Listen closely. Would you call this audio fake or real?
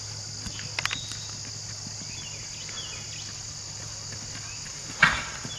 real